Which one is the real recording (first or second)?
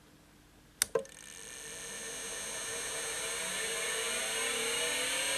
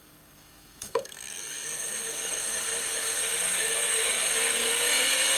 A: first